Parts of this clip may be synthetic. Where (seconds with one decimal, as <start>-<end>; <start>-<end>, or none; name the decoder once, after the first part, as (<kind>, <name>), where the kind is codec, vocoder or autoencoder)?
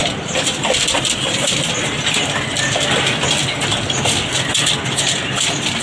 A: none